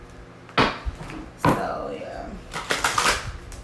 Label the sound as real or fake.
real